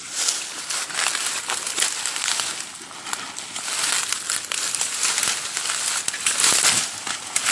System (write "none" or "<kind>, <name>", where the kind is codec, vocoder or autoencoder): none